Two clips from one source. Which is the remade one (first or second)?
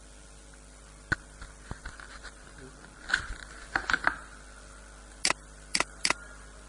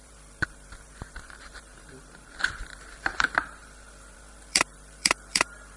second